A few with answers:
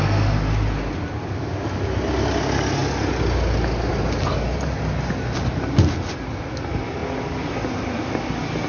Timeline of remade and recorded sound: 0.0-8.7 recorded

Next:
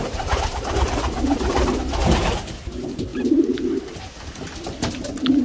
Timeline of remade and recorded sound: 0.0-2.5 remade; 2.5-3.1 recorded; 3.1-4.9 remade; 4.9-5.4 recorded